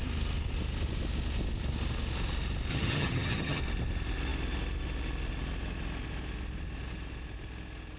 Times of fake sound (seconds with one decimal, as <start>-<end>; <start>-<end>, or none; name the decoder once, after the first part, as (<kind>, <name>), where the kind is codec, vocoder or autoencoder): 2.7-3.6 (vocoder, HiFi-GAN)